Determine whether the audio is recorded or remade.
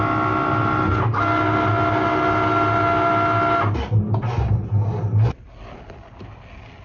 recorded